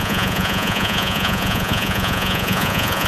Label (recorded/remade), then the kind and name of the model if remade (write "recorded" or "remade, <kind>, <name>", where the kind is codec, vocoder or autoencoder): remade, vocoder, Vocos